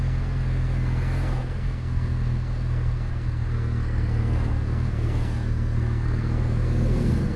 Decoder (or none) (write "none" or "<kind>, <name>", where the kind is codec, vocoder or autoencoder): codec, SNAC